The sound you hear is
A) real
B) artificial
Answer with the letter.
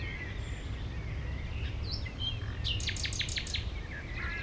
A